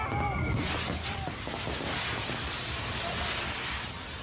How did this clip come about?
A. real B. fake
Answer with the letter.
A